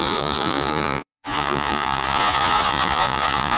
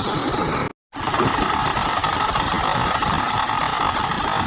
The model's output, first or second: first